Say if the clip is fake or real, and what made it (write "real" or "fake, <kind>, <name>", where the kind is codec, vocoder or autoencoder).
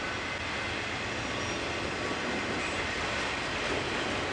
real